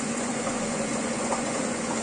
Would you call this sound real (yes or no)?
no